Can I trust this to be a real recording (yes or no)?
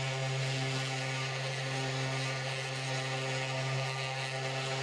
yes